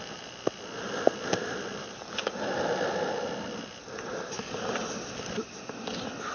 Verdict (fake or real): real